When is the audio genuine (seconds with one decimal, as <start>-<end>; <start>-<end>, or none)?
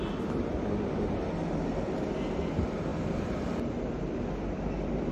0.0-5.1